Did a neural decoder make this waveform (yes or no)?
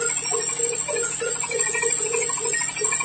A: no